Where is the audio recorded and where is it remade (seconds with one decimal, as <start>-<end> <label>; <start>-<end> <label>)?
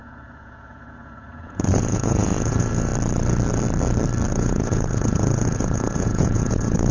0.0-2.9 remade; 2.9-4.3 recorded; 4.3-6.9 remade